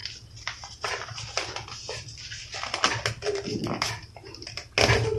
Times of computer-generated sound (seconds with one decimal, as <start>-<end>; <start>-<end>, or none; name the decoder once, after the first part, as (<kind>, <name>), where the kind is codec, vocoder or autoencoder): none